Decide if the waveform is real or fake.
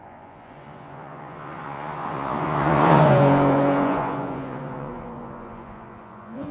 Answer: fake